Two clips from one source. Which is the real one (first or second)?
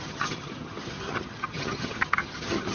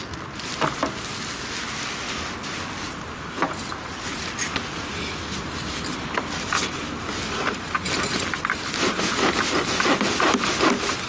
second